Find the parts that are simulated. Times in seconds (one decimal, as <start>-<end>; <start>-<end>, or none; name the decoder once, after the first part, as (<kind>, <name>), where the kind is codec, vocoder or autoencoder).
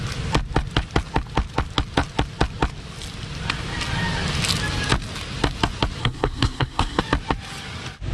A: 6.0-7.0 (codec, SNAC)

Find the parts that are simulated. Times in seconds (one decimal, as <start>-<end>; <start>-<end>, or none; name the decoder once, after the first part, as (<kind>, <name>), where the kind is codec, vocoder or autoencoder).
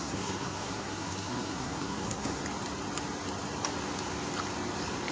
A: 0.0-2.4 (codec, SNAC)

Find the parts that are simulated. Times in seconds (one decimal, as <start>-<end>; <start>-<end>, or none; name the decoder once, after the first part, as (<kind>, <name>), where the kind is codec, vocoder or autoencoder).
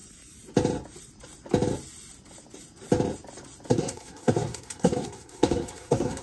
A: 3.7-6.2 (codec, SNAC)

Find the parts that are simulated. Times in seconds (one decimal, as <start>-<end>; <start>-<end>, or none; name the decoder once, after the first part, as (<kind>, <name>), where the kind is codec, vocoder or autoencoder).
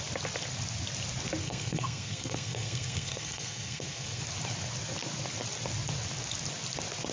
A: 1.4-4.2 (codec, SNAC)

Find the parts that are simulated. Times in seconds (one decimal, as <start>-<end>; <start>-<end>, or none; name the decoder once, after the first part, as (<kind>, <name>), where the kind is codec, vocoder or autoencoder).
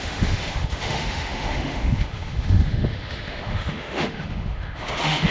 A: 0.0-5.3 (autoencoder, DAC-VAE)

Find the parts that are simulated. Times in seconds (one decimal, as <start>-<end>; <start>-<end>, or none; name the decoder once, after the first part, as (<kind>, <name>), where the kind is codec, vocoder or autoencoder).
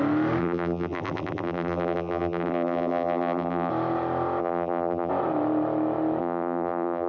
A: 0.4-3.7 (vocoder, BigVGAN v2); 4.4-5.1; 6.2-7.1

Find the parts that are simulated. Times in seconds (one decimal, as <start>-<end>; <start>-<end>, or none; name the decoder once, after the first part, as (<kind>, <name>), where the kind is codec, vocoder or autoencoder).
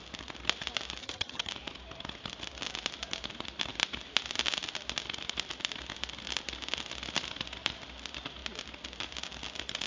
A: 1.0-1.5 (vocoder, HiFi-GAN)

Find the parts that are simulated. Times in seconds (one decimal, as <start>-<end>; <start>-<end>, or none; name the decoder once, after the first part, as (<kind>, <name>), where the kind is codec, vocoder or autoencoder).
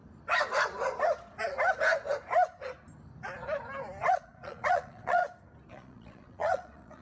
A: 4.1-5.2 (vocoder, Vocos); 5.7-7.0